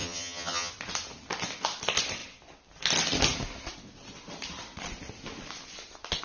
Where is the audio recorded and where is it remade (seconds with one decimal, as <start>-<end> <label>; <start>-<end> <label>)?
0.0-0.7 remade; 0.7-6.2 recorded